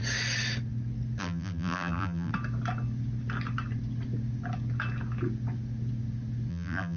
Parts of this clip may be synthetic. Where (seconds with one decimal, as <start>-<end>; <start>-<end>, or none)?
1.2-2.3; 6.5-7.0